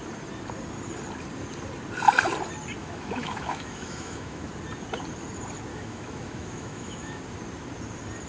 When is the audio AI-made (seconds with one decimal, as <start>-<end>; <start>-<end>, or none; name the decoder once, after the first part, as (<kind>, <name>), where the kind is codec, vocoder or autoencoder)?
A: 2.8-4.5 (autoencoder, DAC-VAE); 5.7-7.2